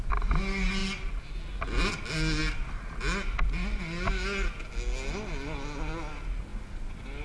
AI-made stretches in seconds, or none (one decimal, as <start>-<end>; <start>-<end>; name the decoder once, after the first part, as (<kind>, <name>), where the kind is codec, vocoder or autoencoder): none